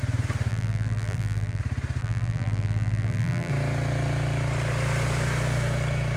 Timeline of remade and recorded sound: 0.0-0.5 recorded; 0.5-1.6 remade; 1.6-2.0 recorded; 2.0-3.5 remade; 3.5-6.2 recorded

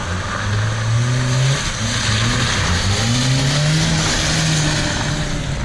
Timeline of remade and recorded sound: 0.0-5.6 recorded

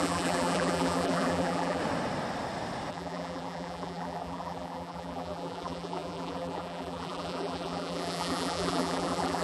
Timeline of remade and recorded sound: 0.0-1.8 remade; 1.8-2.9 recorded; 2.9-9.4 remade

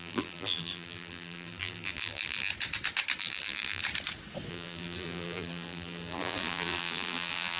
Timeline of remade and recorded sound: 0.0-2.5 remade; 2.5-3.2 recorded; 3.2-3.8 remade; 3.8-4.5 recorded; 4.5-7.6 remade

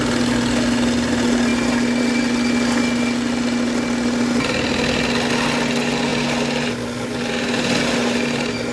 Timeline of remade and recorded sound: 0.0-8.7 recorded

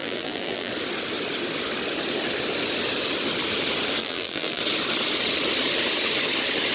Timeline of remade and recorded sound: 0.0-0.7 remade; 0.7-4.0 recorded; 4.0-4.6 remade; 4.6-6.7 recorded

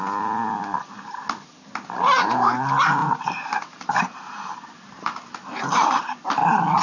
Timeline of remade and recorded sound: 0.0-3.0 recorded; 3.0-6.0 remade; 6.0-6.8 recorded